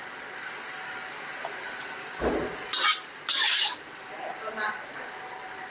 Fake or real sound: real